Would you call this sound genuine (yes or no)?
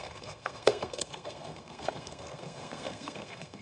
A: no